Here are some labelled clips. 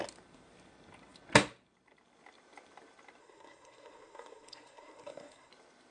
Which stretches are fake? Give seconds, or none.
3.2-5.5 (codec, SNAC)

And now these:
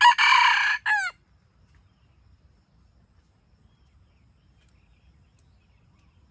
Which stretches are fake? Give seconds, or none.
none